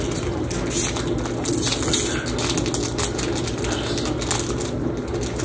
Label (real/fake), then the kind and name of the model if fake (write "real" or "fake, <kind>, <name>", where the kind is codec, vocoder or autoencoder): real